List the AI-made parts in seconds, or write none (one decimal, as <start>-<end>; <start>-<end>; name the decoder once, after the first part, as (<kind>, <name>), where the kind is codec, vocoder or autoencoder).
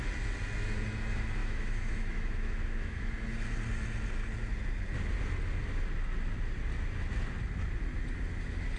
1.4-3.1 (autoencoder, DAC-VAE)